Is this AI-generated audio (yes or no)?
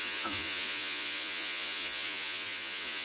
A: yes